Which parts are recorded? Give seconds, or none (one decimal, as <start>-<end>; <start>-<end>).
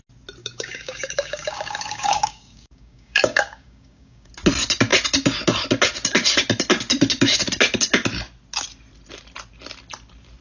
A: 0.0-0.4; 4.3-10.4